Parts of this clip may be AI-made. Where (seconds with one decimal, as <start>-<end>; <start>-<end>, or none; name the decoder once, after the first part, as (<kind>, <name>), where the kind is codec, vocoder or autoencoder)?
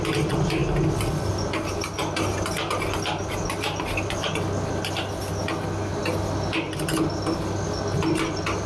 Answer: none